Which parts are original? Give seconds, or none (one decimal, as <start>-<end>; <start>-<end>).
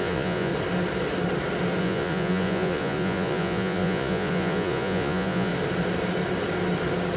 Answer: 0.5-1.8; 5.5-7.2